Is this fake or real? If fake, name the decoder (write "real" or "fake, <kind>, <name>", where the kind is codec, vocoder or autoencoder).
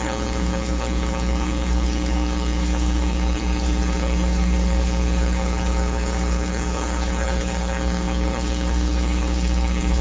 fake, codec, HILCodec